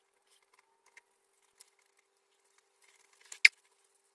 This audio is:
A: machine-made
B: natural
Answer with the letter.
B